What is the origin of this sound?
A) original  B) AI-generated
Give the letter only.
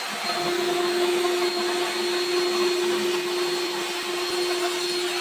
A